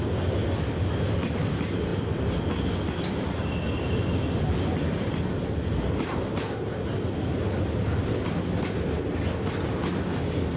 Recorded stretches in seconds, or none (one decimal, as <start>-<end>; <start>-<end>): 0.0-10.6